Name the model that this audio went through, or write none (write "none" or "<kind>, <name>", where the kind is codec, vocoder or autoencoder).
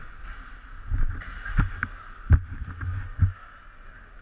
none